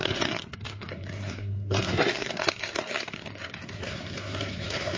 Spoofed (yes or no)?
yes